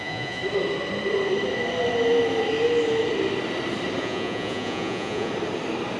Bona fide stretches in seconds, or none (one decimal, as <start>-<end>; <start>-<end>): 0.4-4.0; 5.3-6.0